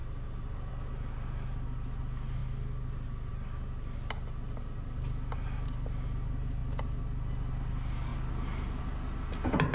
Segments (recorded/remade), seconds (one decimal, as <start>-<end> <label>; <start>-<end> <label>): 0.0-9.7 recorded